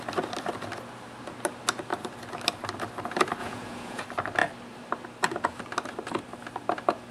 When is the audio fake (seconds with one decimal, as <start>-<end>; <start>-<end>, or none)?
3.4-4.0